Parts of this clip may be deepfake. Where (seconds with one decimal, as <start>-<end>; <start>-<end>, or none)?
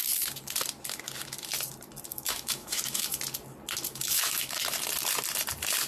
2.1-3.2; 3.9-4.6